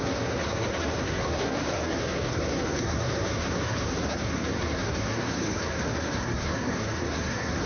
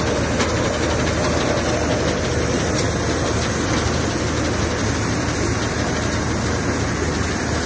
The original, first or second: second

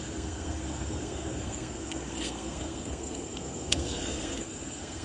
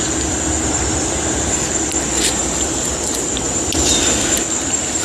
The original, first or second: second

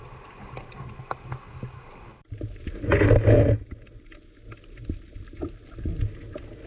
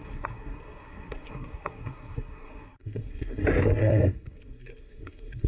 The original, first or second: first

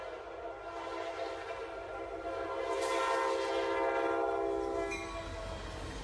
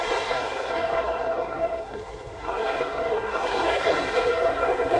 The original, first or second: first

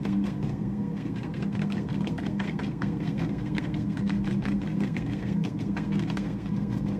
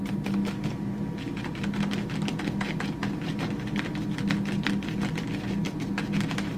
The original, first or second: second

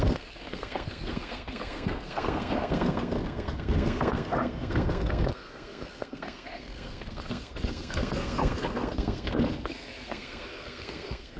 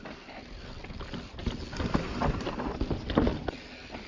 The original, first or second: second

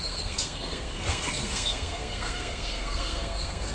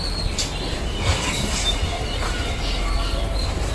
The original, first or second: second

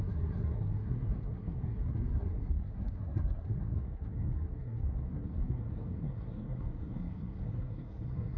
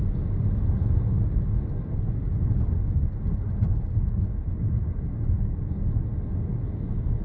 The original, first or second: second